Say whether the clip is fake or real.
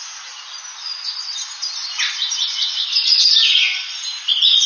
real